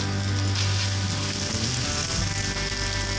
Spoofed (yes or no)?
no